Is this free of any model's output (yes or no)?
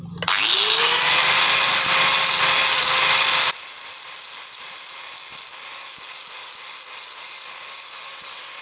yes